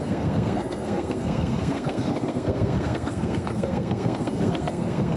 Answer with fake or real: fake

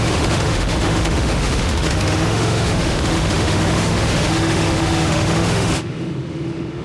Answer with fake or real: fake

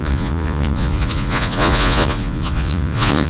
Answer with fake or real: fake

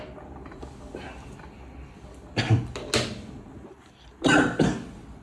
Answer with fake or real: real